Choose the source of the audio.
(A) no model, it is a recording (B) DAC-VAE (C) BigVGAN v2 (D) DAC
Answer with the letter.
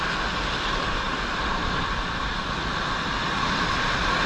A